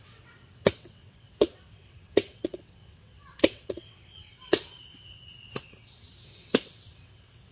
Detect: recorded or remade remade